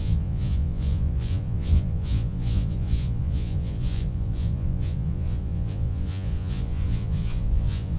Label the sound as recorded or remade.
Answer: remade